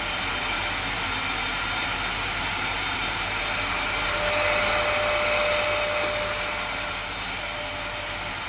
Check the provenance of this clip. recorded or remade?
recorded